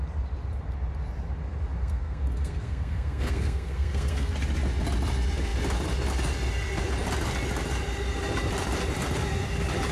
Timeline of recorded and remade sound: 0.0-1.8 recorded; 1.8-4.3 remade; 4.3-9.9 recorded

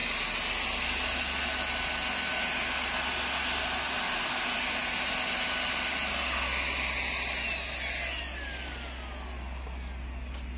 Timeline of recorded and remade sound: 0.0-10.6 recorded